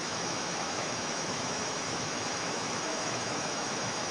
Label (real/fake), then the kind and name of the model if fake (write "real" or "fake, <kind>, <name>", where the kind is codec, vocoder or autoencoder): fake, autoencoder, DAC-VAE